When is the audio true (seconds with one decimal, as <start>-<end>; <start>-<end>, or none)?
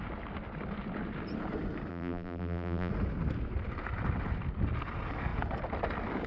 0.0-1.9; 2.9-6.3